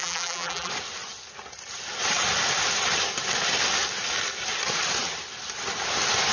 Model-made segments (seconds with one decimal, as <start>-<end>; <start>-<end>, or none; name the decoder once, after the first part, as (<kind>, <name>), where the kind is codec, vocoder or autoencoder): 0.0-0.7 (vocoder, BigVGAN v2)

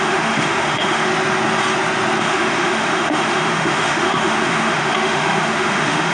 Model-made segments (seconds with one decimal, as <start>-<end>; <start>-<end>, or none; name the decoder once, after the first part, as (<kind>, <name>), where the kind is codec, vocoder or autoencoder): 0.0-1.1 (autoencoder, DAC-VAE); 2.2-6.1

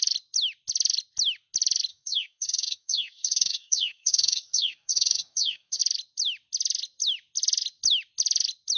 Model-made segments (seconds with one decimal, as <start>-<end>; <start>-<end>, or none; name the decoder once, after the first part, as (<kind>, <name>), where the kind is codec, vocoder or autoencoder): 1.9-5.8 (codec, DAC)

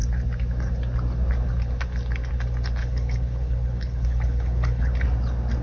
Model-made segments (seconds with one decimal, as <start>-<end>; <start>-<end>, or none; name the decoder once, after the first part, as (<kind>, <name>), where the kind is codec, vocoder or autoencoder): 2.8-4.9 (codec, HILCodec)

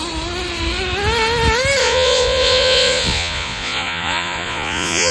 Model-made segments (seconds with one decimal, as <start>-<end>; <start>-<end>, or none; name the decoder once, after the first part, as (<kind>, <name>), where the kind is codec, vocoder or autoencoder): 1.8-5.1 (vocoder, Vocos)